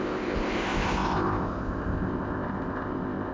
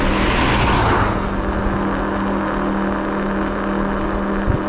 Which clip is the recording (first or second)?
second